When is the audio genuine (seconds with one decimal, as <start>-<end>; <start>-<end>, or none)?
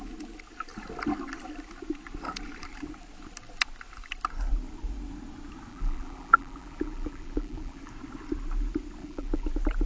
0.0-5.7; 7.9-9.0; 9.5-9.9